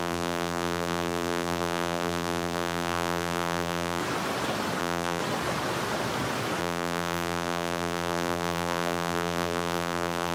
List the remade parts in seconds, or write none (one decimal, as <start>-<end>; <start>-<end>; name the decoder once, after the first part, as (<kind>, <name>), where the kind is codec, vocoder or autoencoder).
0.0-4.0 (vocoder, BigVGAN v2); 4.8-5.2; 6.6-10.3